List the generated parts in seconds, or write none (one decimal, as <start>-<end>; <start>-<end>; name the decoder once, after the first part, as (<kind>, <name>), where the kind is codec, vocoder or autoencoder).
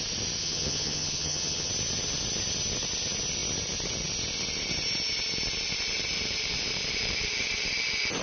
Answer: 0.4-1.7 (vocoder, HiFi-GAN)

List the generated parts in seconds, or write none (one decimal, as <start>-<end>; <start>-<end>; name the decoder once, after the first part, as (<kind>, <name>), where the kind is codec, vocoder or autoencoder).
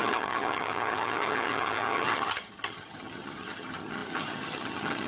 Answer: 0.0-5.1 (vocoder, HiFi-GAN)